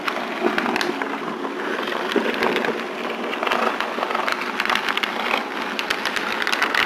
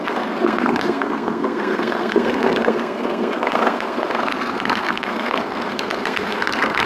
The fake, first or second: second